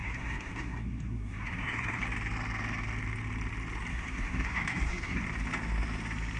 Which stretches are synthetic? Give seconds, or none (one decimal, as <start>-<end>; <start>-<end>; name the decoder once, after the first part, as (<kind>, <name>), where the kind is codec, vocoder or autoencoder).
0.0-2.0 (codec, SNAC); 3.9-5.2